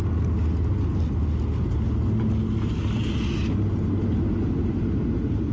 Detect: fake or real real